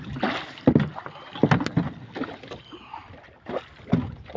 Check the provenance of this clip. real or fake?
real